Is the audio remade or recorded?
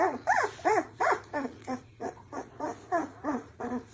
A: remade